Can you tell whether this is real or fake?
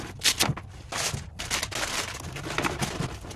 real